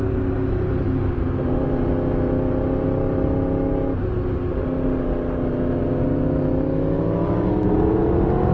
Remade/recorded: recorded